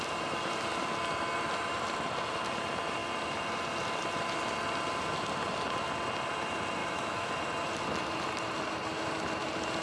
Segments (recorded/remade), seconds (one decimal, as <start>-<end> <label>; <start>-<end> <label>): 0.0-6.8 recorded; 6.8-7.3 remade; 7.3-9.8 recorded